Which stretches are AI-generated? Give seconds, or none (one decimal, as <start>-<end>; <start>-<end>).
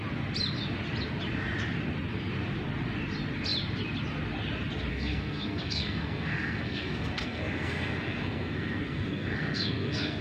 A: 4.9-10.2